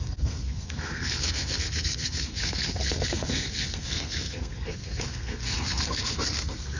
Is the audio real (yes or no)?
no